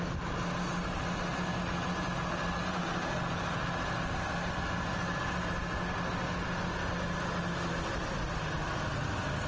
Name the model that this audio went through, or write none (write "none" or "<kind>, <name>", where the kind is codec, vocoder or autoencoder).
none